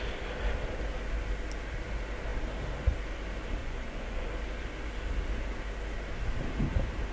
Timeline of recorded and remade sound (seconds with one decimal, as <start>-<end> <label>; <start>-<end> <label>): 0.0-3.6 recorded; 3.6-4.3 remade; 4.3-7.1 recorded